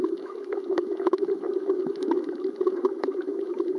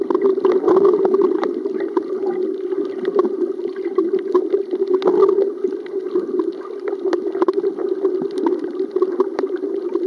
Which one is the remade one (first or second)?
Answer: first